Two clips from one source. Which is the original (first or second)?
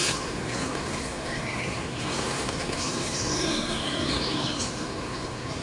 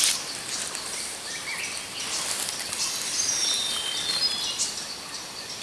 second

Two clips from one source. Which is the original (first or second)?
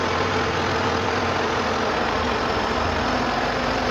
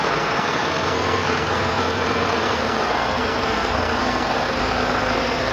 first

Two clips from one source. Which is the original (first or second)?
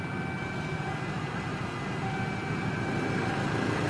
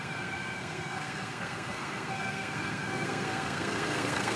first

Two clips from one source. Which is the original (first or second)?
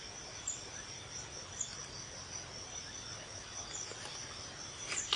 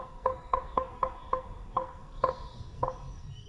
first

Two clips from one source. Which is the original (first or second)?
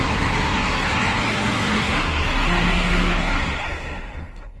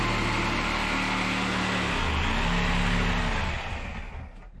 second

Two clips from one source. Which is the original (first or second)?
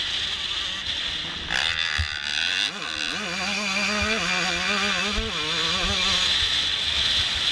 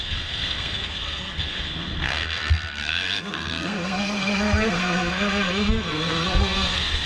first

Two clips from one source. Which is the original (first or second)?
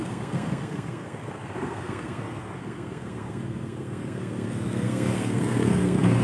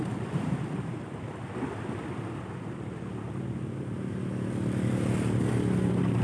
second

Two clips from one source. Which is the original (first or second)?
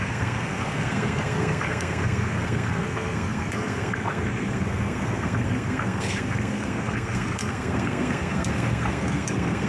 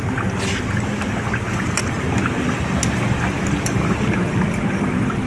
second